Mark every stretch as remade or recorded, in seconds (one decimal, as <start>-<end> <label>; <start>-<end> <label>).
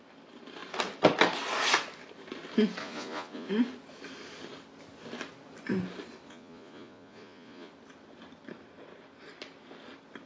0.0-2.8 recorded; 2.8-3.5 remade; 3.5-6.3 recorded; 6.3-7.7 remade; 7.7-10.3 recorded